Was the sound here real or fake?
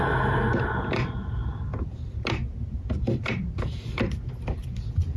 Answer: real